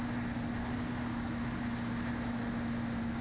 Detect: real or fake real